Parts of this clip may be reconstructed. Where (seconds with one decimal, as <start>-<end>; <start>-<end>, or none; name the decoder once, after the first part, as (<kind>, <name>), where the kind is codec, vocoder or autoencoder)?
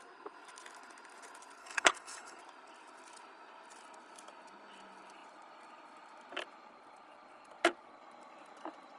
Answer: 1.6-2.4 (codec, HILCodec)